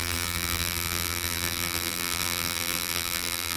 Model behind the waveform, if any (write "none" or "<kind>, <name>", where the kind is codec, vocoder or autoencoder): vocoder, BigVGAN v2